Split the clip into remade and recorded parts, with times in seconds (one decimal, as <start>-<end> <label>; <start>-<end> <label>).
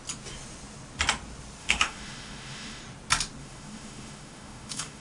0.0-1.6 recorded; 1.6-2.8 remade; 2.8-3.4 recorded; 3.4-5.0 remade